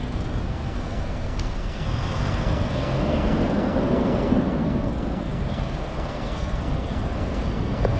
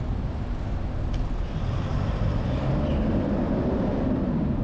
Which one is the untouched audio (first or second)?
second